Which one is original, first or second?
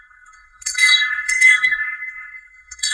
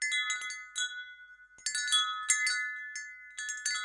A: second